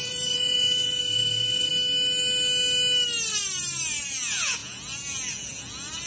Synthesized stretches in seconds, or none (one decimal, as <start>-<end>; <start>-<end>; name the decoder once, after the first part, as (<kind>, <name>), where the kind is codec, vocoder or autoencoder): 0.0-1.7 (vocoder, Vocos); 4.0-6.1